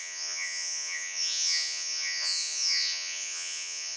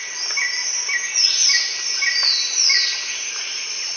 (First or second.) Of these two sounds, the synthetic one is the first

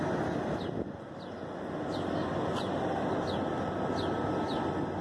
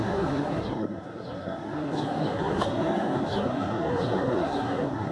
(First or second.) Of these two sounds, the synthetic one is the second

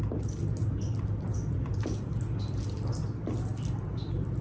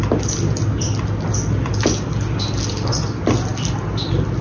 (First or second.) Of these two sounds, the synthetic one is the first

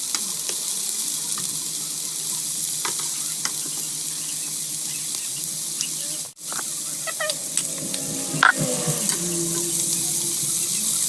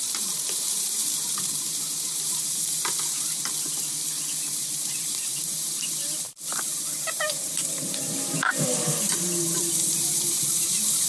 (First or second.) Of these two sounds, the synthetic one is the second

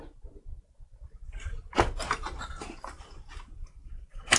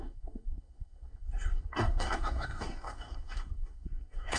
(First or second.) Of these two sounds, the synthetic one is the second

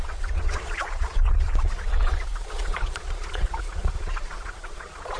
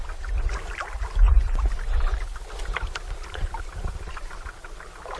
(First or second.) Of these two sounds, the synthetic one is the first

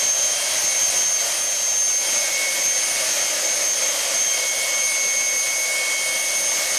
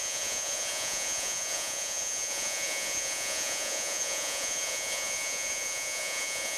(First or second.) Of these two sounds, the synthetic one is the second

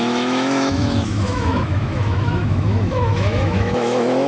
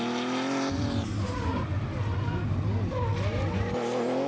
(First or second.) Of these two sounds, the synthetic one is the first